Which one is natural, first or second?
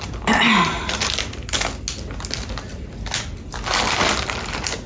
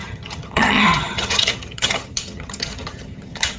first